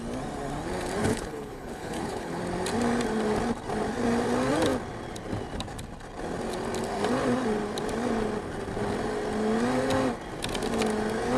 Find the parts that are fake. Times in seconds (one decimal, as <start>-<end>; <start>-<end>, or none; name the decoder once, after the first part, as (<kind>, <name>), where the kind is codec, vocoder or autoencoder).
1.0-2.4 (codec, HILCodec)